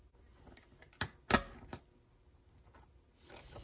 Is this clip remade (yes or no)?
no